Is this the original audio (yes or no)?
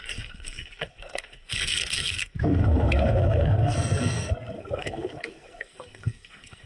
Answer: no